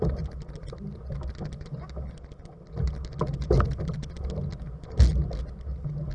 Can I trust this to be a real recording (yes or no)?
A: yes